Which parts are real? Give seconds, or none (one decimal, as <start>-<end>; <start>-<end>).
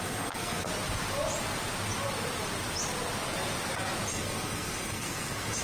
0.7-4.1